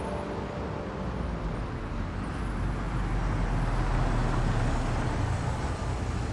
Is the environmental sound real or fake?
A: real